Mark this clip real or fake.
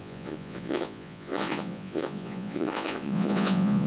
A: fake